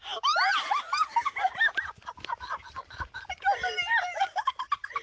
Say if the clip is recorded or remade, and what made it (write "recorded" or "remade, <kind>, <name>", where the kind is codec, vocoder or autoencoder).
recorded